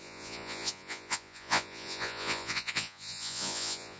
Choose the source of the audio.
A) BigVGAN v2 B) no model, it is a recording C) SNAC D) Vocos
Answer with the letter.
D